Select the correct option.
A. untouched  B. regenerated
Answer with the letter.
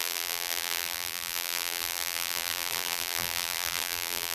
B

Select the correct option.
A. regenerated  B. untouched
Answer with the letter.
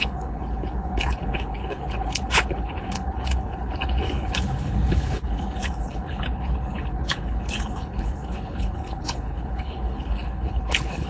A